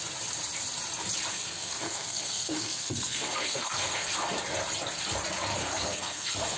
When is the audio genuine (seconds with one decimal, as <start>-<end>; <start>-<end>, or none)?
0.0-1.3; 4.1-5.5